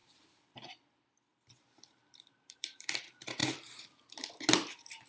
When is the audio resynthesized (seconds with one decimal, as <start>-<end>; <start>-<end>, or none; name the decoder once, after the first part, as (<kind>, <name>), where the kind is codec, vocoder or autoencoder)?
0.0-0.9 (vocoder, BigVGAN v2); 1.3-3.0; 3.4-4.0